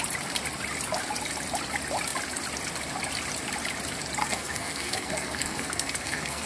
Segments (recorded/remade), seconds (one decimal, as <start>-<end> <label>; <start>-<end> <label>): 0.0-4.2 recorded; 4.2-6.5 remade